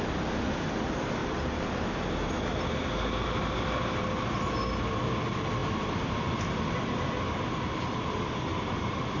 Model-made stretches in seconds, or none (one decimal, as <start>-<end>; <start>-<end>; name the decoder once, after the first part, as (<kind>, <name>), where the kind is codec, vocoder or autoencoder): 8.5-9.2 (vocoder, BigVGAN v2)